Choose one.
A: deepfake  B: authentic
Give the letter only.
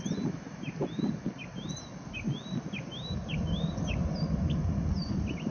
B